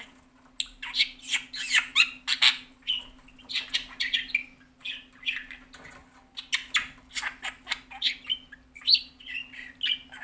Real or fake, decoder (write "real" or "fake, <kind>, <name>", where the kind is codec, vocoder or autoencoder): real